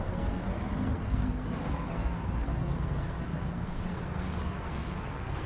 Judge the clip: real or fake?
fake